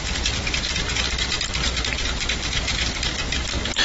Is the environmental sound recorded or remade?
recorded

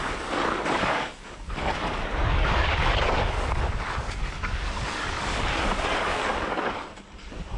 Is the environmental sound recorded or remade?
remade